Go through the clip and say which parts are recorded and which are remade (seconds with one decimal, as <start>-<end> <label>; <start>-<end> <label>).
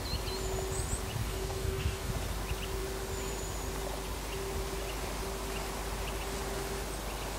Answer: 0.0-1.2 recorded; 1.2-2.1 remade; 2.1-7.4 recorded